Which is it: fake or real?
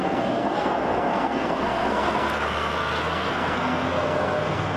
fake